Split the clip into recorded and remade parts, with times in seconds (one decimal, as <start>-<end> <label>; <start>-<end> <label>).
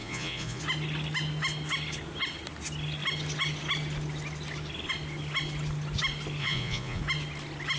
0.0-0.6 remade; 0.6-6.4 recorded; 6.4-7.0 remade; 7.0-7.8 recorded